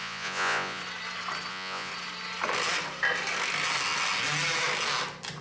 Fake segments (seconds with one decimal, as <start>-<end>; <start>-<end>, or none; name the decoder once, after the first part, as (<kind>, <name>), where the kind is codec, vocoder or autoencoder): 0.0-0.8 (vocoder, Vocos); 1.5-1.9